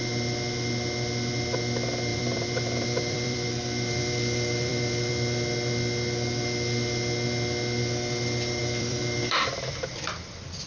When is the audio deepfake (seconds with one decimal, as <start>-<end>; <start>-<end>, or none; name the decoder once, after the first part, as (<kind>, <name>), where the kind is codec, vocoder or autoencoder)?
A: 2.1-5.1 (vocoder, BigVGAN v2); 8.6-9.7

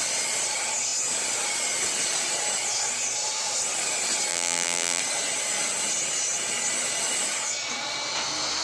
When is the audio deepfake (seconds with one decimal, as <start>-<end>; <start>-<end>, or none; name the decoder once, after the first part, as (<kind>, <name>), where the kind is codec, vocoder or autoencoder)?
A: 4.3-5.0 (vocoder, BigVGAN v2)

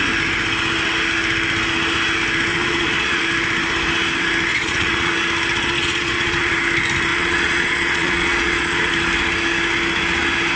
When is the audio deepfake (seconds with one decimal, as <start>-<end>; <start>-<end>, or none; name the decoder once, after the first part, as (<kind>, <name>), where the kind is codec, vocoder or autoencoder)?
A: 2.5-3.2 (vocoder, Vocos); 4.5-5.1; 5.5-6.5; 7.1-8.9

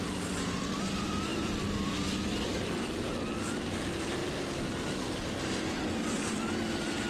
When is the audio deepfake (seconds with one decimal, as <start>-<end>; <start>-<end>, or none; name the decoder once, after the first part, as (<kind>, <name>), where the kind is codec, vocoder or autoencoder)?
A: 0.0-2.5 (vocoder, BigVGAN v2); 3.4-4.2

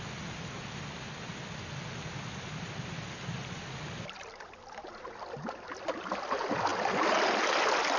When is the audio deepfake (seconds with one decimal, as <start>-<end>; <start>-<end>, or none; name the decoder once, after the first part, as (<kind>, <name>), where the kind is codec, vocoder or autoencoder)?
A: none

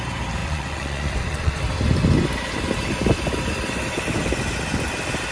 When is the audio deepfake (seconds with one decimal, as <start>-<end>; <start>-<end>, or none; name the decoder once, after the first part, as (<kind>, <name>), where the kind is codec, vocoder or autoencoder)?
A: 0.4-1.6 (vocoder, Vocos)